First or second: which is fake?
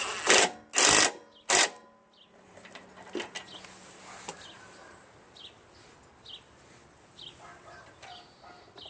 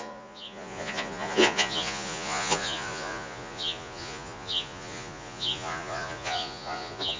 second